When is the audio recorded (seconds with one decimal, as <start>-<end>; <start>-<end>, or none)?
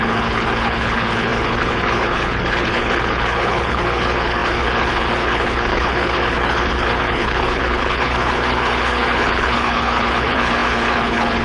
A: none